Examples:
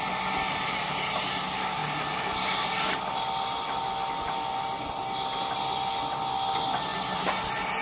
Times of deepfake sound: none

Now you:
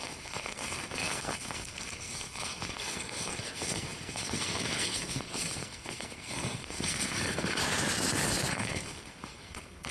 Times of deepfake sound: 0.0-7.6 (codec, SNAC); 8.5-9.9

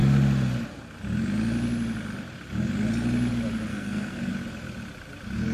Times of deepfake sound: 3.7-4.3 (codec, SNAC)

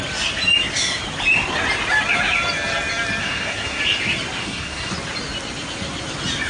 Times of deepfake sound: 3.2-3.8 (codec, SNAC); 4.4-4.9

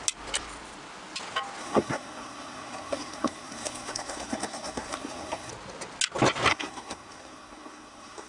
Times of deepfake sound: 1.6-5.5 (codec, SNAC); 6.5-8.3